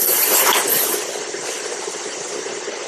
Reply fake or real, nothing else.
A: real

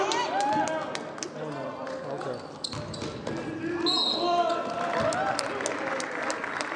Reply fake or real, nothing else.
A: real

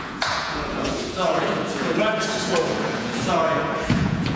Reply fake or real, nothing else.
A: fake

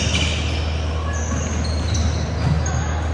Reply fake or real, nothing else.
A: real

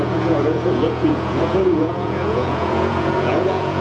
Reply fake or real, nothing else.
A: fake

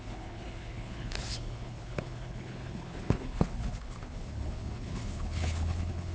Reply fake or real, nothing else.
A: fake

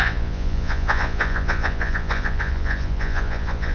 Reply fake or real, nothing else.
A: fake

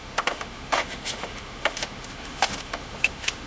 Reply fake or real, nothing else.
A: fake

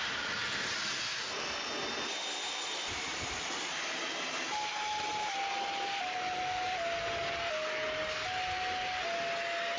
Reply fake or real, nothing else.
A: real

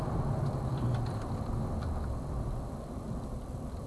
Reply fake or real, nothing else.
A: fake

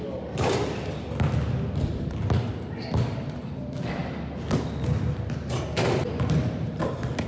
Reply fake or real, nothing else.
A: real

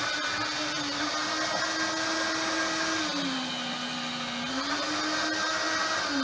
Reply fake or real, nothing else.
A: real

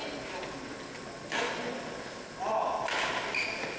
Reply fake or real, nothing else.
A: real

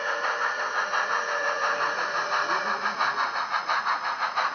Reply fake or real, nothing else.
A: fake